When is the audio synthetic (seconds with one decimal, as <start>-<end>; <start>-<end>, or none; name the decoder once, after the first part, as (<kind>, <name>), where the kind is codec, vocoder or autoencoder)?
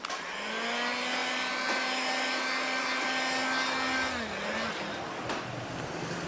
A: none